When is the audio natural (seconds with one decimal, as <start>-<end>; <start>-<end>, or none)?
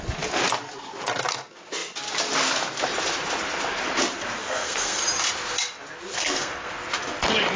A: 0.0-4.4; 5.0-6.1; 6.7-7.6